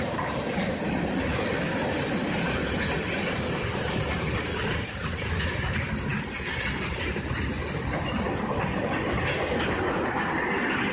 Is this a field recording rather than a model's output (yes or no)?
yes